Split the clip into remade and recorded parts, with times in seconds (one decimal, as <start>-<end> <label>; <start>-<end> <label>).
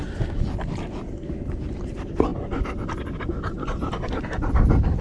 0.0-5.0 recorded